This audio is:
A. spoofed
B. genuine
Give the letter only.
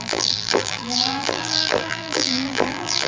A